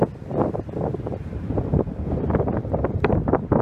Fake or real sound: real